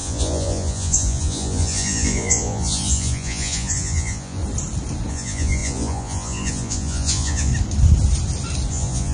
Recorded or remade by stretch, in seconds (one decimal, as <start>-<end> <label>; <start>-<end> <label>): 0.0-4.4 remade; 4.4-5.1 recorded; 5.1-7.5 remade; 7.5-8.7 recorded; 8.7-9.1 remade